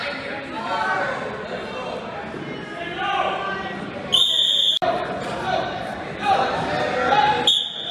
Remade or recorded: recorded